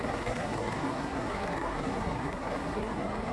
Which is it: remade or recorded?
remade